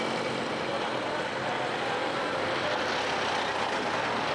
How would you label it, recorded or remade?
recorded